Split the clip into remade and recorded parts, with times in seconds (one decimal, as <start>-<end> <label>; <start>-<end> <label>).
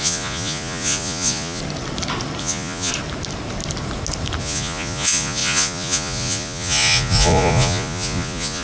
0.0-1.6 remade; 1.6-2.4 recorded; 2.4-2.9 remade; 2.9-4.4 recorded; 4.4-8.6 remade